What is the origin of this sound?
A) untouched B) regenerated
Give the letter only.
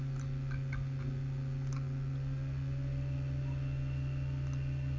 A